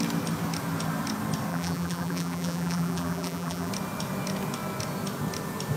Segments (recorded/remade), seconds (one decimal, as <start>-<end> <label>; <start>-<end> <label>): 0.0-1.5 recorded; 1.5-3.7 remade; 3.7-5.8 recorded